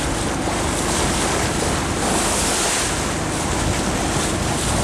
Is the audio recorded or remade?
recorded